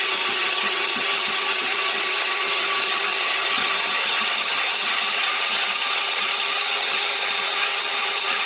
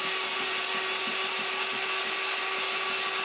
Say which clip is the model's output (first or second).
first